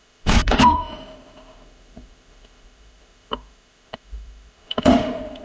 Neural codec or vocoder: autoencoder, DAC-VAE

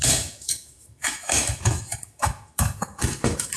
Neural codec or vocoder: autoencoder, DAC-VAE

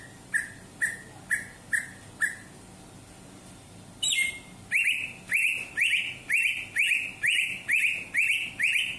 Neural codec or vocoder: none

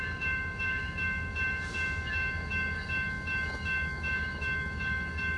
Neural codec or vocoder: autoencoder, DAC-VAE